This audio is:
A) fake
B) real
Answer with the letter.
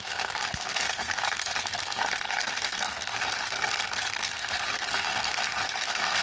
A